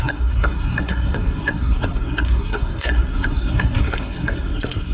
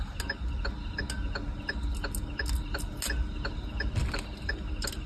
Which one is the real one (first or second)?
second